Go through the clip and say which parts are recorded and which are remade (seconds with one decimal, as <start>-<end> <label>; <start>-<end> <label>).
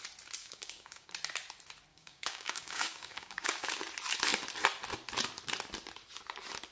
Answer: 0.0-0.4 recorded; 0.4-1.1 remade; 1.1-1.9 recorded; 1.9-3.8 remade; 3.8-6.7 recorded